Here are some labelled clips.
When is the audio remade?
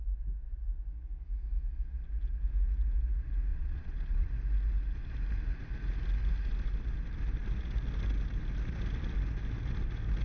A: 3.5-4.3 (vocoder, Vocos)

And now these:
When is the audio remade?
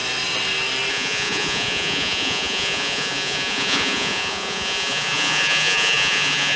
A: 0.9-6.6 (vocoder, Vocos)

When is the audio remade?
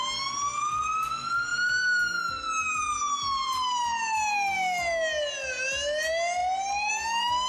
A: none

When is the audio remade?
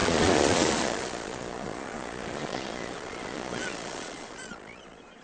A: 0.0-5.2 (vocoder, Vocos)